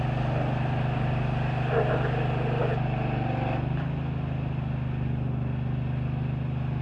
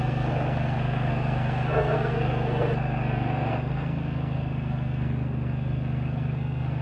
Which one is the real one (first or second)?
first